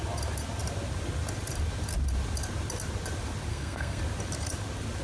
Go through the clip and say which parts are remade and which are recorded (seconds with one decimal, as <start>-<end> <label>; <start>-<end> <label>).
0.0-3.5 recorded; 3.5-4.0 remade; 4.0-5.0 recorded